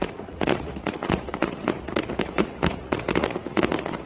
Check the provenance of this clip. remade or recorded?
remade